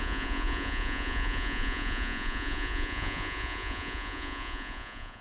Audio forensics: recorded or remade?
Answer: remade